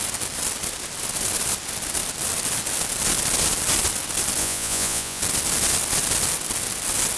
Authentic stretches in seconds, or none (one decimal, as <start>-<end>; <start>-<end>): 0.0-4.4; 5.2-7.2